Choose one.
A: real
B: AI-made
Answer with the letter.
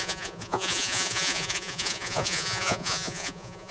B